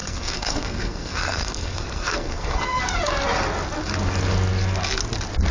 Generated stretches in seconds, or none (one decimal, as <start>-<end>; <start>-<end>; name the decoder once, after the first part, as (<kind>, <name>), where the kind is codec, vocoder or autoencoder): 0.0-2.8 (codec, SNAC)